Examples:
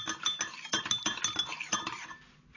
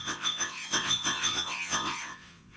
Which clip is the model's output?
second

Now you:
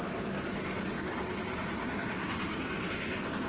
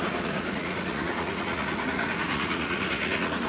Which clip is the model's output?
second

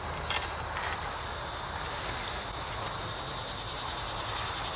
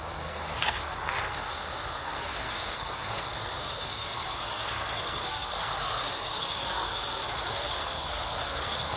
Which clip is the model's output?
second